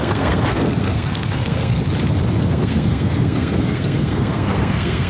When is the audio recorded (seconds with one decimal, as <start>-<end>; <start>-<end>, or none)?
1.8-2.4